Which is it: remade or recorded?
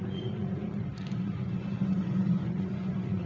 remade